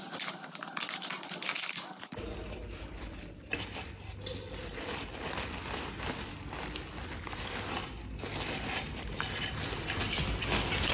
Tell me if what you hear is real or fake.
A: real